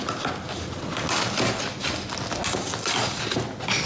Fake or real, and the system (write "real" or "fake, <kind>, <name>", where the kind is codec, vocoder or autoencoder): real